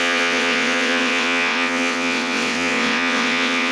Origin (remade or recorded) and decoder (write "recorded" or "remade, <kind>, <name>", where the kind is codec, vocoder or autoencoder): remade, vocoder, WaveNeXt